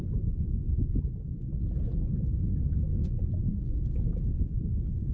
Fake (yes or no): no